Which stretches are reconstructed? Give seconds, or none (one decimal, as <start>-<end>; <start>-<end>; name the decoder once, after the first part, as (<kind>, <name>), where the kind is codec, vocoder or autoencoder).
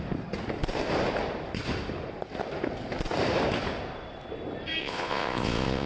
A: 4.8-5.9 (vocoder, Vocos)